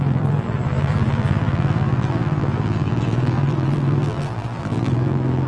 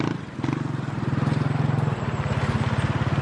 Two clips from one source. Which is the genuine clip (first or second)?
second